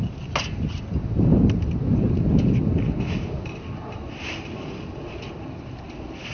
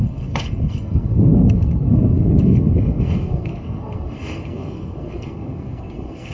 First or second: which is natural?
first